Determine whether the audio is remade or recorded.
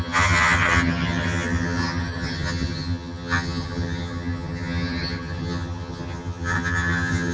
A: remade